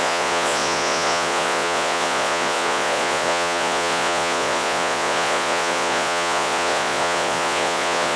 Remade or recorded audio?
remade